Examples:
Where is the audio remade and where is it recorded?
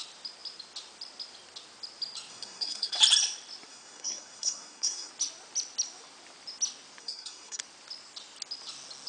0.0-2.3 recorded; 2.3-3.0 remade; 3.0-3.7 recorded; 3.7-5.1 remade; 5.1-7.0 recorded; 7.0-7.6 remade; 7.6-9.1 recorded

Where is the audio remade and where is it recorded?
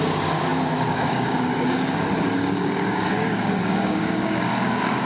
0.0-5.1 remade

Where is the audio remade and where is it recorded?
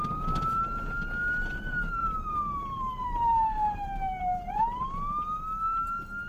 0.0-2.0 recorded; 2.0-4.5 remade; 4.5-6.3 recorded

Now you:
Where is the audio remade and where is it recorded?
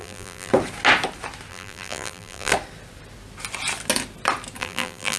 0.0-0.5 remade; 0.5-1.5 recorded; 1.5-2.5 remade; 2.5-4.6 recorded; 4.6-5.2 remade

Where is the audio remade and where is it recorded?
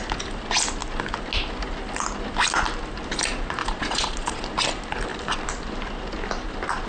0.0-3.6 recorded; 3.6-4.4 remade; 4.4-6.9 recorded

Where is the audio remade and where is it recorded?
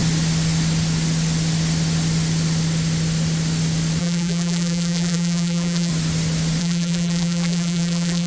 0.0-4.0 recorded; 4.0-5.9 remade; 5.9-6.6 recorded; 6.6-8.3 remade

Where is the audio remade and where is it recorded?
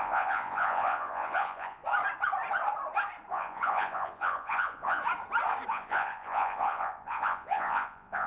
0.0-1.8 remade; 1.8-3.3 recorded; 3.3-5.0 remade; 5.0-5.7 recorded; 5.7-8.3 remade